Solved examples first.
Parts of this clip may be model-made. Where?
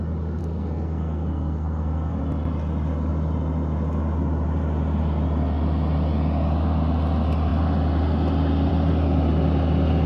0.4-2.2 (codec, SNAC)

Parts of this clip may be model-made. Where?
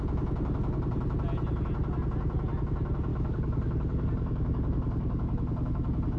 3.1-6.2 (codec, DAC)